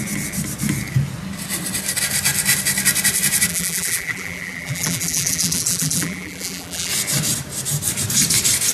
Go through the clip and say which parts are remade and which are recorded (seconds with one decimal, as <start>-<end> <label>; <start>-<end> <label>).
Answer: 0.0-3.5 recorded; 3.5-6.9 remade; 6.9-8.7 recorded

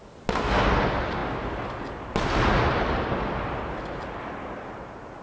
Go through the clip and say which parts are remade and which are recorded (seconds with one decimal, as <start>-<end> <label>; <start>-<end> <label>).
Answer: 0.0-5.2 recorded

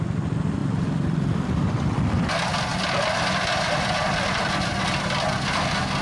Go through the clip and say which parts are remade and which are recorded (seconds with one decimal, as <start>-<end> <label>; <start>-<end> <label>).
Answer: 0.0-0.6 recorded; 0.6-2.3 remade; 2.3-6.0 recorded

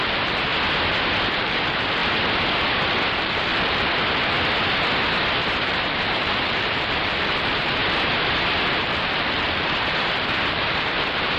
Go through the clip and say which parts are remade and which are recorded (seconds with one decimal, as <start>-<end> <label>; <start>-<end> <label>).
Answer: 0.0-0.5 remade; 0.5-1.3 recorded; 1.3-2.0 remade; 2.0-3.1 recorded; 3.1-3.5 remade; 3.5-5.4 recorded; 5.4-7.8 remade; 7.8-8.8 recorded; 8.8-11.4 remade

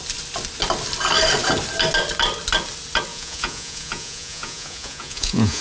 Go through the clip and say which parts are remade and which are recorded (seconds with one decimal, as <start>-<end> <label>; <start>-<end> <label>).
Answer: 0.0-3.1 recorded; 3.1-5.6 remade

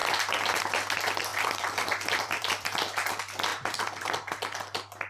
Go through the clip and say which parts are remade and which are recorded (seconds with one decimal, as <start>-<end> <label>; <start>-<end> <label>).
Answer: 0.0-0.6 remade; 0.6-1.3 recorded; 1.3-3.1 remade; 3.1-3.5 recorded; 3.5-4.4 remade; 4.4-5.1 recorded

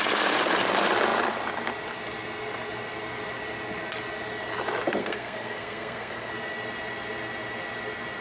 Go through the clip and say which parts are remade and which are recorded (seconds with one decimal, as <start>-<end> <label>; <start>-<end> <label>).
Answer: 0.0-5.0 recorded; 5.0-6.3 remade; 6.3-8.2 recorded

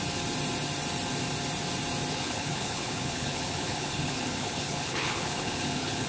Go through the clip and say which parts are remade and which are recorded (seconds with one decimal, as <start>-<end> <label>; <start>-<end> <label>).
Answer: 0.0-2.1 recorded; 2.1-6.1 remade